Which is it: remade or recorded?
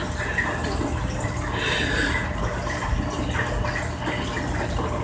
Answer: recorded